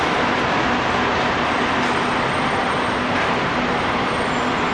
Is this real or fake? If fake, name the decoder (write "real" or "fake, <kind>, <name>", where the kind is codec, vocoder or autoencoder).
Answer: real